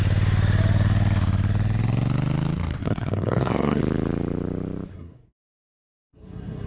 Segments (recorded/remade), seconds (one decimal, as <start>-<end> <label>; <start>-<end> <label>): 0.0-2.8 recorded; 2.8-3.8 remade; 3.8-4.9 recorded; 4.9-6.7 remade